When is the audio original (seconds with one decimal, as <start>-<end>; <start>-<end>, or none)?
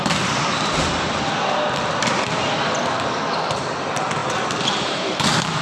0.0-4.2